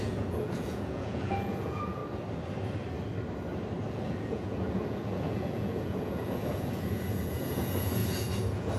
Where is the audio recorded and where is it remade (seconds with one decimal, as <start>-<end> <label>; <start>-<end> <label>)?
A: 0.0-2.0 remade; 2.0-3.9 recorded; 3.9-8.8 remade

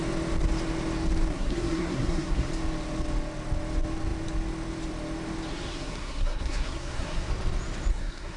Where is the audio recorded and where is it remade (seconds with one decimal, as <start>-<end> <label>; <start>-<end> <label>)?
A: 0.0-1.3 recorded; 1.3-2.5 remade; 2.5-5.5 recorded; 5.5-7.3 remade; 7.3-7.9 recorded; 7.9-8.4 remade